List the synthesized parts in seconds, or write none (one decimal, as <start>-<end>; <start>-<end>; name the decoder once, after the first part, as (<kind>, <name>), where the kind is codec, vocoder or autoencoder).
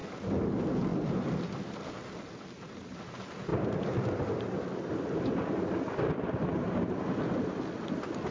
none